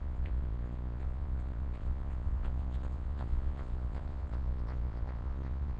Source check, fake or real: fake